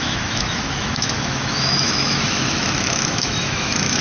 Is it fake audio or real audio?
fake